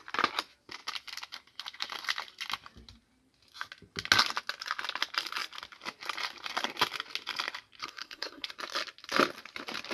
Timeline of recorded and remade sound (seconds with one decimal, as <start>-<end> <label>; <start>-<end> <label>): 0.0-7.8 recorded; 7.8-8.5 remade; 8.5-9.9 recorded